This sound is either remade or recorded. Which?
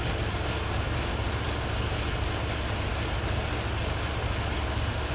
recorded